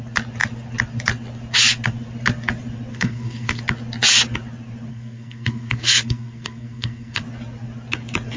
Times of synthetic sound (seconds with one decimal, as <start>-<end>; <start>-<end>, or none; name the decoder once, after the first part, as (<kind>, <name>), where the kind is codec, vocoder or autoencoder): 2.9-3.6 (codec, SNAC); 4.9-7.2